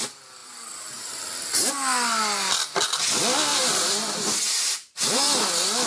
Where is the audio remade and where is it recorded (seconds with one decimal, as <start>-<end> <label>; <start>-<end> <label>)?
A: 0.0-0.4 recorded; 0.4-1.2 remade; 1.2-3.5 recorded; 3.5-5.4 remade; 5.4-5.9 recorded